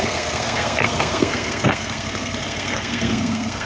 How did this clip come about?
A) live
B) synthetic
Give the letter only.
B